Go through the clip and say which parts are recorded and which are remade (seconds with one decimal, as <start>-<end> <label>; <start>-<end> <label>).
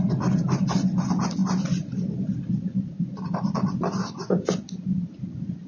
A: 0.0-5.7 recorded